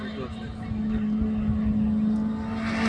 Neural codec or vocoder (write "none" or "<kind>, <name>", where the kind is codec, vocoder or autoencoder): none